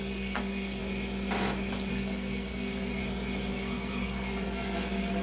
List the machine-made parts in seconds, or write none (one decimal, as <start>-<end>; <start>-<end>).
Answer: 0.0-0.8; 1.9-3.0; 3.5-5.2

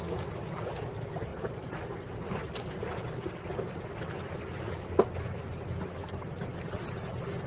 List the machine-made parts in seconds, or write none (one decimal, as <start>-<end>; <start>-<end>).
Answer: 1.3-2.8

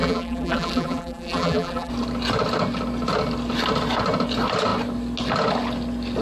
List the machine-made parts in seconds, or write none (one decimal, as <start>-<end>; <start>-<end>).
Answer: 0.0-1.9

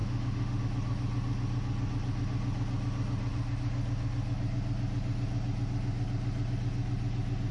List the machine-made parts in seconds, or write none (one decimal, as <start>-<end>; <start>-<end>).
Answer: 0.0-0.6

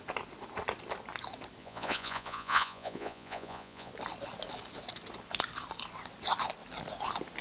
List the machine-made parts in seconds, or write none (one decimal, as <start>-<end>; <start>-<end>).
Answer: 1.6-3.9